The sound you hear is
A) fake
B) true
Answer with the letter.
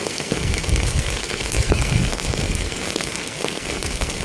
A